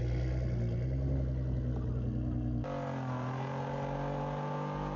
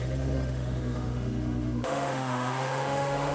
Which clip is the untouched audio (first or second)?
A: first